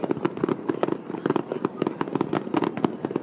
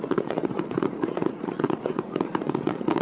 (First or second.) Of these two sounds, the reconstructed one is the second